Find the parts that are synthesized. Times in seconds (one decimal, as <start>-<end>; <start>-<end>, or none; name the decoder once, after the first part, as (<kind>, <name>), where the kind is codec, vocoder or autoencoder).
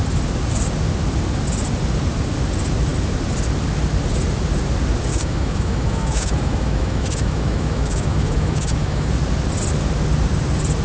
5.1-9.1 (autoencoder, DAC-VAE)